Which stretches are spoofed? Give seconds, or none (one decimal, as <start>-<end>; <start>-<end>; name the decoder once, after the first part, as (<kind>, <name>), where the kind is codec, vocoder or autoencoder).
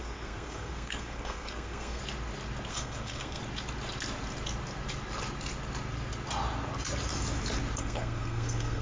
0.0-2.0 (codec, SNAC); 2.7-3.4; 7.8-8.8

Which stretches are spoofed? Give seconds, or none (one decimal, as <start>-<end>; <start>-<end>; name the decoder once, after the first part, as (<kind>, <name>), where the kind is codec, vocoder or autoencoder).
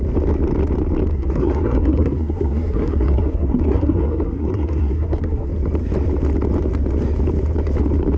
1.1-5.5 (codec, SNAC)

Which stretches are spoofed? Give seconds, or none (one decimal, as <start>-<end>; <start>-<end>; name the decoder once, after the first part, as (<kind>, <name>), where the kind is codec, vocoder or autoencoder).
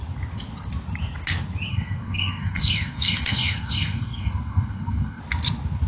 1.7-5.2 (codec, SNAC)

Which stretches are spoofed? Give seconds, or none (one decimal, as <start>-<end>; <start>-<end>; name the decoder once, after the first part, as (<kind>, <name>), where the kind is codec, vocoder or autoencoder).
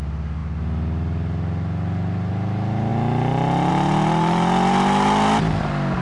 none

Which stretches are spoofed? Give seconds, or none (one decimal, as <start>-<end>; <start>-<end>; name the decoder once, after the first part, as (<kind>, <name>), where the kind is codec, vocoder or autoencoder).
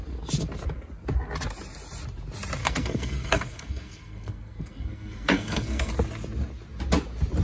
2.6-5.9 (codec, SNAC)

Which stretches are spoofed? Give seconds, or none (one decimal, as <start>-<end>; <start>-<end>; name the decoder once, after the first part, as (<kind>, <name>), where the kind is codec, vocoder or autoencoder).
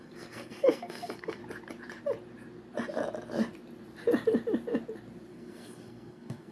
0.0-1.4 (codec, SNAC); 5.3-6.5